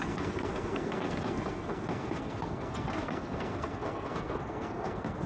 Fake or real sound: fake